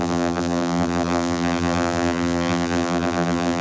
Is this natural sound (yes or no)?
no